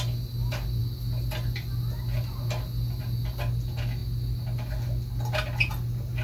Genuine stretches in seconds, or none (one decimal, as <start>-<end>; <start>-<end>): 0.0-6.2